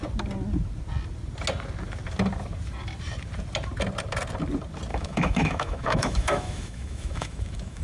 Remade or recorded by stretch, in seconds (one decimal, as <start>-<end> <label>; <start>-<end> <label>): 0.0-4.9 recorded; 4.9-7.8 remade